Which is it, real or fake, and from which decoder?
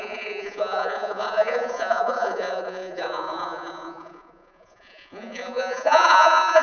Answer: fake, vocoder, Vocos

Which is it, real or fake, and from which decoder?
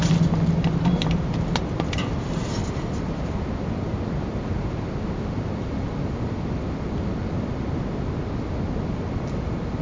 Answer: real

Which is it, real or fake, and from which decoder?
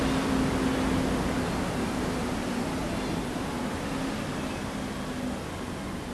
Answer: real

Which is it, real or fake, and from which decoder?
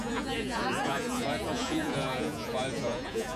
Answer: fake, vocoder, Vocos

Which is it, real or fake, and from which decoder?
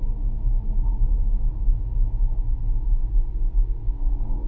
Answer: real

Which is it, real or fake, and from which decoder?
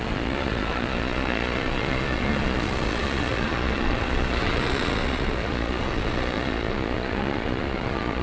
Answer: fake, vocoder, Vocos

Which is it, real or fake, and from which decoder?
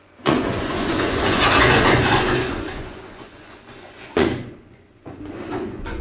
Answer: fake, vocoder, Vocos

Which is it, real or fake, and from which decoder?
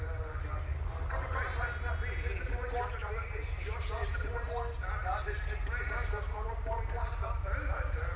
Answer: real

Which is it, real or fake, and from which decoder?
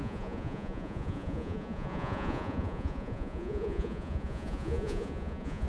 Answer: fake, vocoder, Vocos